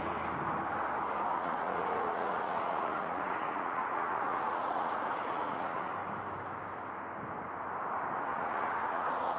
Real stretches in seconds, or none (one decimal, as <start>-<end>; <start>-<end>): 0.0-1.3; 5.9-8.3